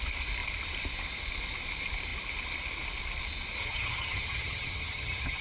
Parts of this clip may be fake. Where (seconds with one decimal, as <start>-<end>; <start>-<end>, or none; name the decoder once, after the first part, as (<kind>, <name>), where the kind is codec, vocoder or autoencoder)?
3.6-5.4 (vocoder, HiFi-GAN)